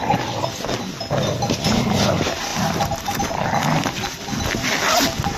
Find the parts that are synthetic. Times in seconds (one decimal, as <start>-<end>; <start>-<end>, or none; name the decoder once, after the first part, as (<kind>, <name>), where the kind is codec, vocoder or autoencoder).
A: none